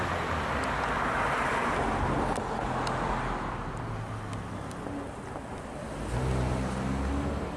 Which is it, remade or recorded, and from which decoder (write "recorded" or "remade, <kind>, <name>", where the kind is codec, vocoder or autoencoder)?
recorded